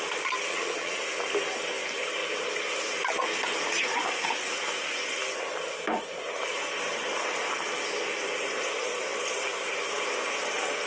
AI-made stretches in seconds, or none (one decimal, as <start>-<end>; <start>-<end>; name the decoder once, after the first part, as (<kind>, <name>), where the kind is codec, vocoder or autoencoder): 0.5-1.0 (vocoder, HiFi-GAN)